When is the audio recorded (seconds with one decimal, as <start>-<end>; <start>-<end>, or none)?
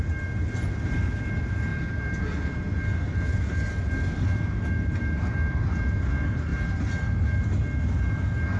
0.0-8.6